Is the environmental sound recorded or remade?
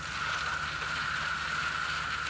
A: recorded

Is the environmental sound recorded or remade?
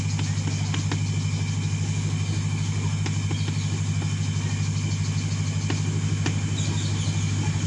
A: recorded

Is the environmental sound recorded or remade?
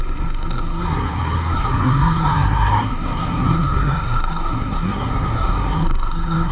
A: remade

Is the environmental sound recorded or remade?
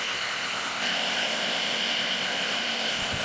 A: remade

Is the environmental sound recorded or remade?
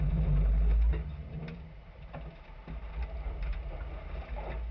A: recorded